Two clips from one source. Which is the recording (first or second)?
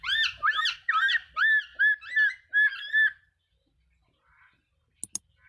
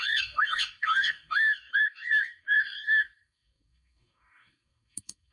first